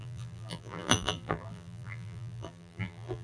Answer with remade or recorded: remade